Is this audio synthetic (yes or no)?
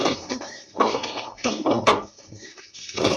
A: yes